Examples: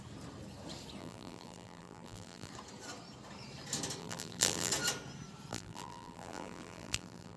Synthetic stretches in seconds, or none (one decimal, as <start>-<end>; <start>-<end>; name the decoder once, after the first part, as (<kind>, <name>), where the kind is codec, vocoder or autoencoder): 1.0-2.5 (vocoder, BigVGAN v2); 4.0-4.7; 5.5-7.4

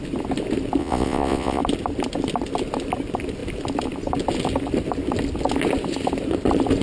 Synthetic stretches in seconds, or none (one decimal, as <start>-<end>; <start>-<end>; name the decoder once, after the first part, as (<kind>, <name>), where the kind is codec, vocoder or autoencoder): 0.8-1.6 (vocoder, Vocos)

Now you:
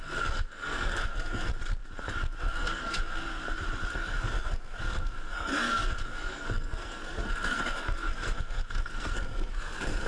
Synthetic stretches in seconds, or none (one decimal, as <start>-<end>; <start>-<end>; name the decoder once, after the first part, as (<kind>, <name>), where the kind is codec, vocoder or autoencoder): 0.0-1.5 (codec, SNAC); 2.4-3.2; 3.9-10.1

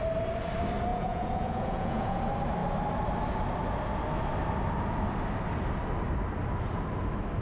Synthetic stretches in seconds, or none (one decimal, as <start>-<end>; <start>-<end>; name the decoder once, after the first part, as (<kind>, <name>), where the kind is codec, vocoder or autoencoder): 0.9-2.2 (vocoder, Vocos)